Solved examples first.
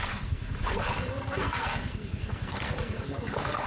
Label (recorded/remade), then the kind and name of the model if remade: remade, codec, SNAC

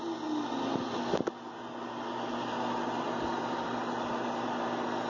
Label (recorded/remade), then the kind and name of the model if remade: recorded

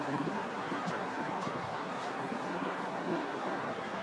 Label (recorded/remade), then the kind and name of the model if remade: remade, codec, SNAC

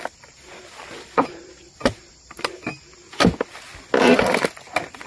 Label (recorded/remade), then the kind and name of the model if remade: recorded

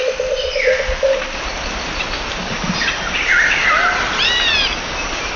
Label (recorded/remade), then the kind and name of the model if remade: recorded